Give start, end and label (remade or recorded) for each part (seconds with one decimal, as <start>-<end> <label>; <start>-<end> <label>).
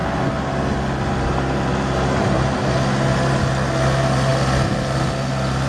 0.0-5.7 recorded